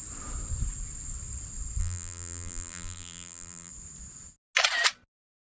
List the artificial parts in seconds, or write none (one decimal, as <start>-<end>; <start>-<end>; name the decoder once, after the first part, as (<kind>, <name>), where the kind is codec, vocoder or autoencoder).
1.8-3.7 (vocoder, BigVGAN v2)